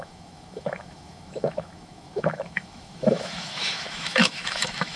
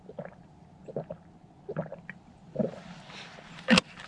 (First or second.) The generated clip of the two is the first